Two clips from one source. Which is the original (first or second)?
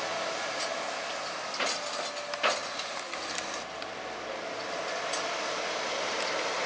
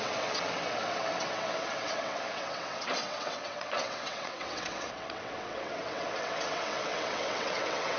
first